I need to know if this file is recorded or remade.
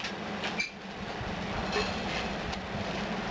remade